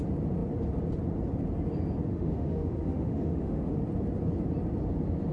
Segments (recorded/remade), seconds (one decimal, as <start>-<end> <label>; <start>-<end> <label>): 0.0-2.1 recorded; 2.1-3.8 remade; 3.8-5.3 recorded